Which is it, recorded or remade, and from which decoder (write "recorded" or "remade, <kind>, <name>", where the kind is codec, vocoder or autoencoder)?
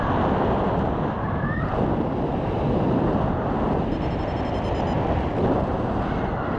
recorded